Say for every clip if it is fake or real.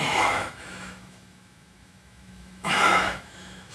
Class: fake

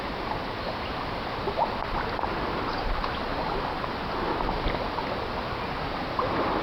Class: real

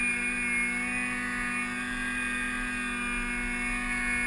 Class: real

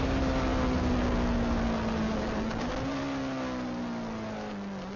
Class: real